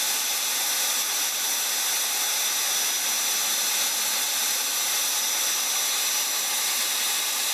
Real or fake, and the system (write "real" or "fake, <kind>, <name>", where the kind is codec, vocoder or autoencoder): real